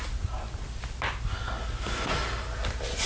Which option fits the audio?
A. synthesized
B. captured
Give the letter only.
B